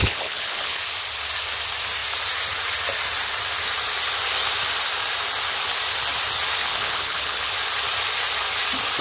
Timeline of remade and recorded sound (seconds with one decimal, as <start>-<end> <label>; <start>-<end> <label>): 0.0-0.8 remade; 0.8-6.6 recorded; 6.6-7.5 remade; 7.5-9.0 recorded

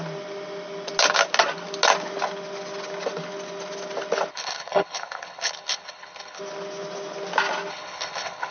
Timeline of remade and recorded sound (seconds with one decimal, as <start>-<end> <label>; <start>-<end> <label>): 0.0-4.3 recorded; 4.3-6.4 remade; 6.4-7.7 recorded; 7.7-8.5 remade

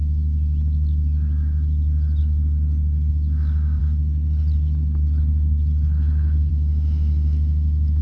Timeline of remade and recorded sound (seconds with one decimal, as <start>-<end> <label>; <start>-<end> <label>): 0.0-2.2 recorded; 2.2-3.1 remade; 3.1-3.8 recorded; 3.8-6.5 remade; 6.5-8.0 recorded

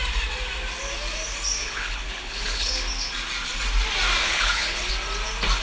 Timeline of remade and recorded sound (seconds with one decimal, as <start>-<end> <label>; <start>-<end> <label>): 0.0-1.6 recorded; 1.6-2.7 remade; 2.7-4.2 recorded; 4.2-4.9 remade; 4.9-5.6 recorded

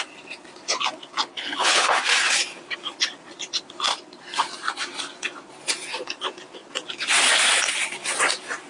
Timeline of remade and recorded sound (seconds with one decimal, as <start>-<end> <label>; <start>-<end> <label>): 0.0-1.3 recorded; 1.3-2.0 remade; 2.0-8.7 recorded

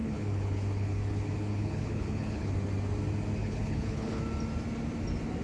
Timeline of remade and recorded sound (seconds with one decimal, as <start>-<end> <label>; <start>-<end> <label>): 0.0-2.5 remade; 2.5-3.4 recorded; 3.4-4.2 remade; 4.2-5.4 recorded